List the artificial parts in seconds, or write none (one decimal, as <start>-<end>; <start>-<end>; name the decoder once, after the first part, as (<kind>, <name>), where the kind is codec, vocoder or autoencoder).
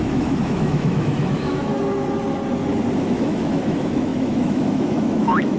0.0-1.7 (autoencoder, DAC-VAE); 3.0-5.6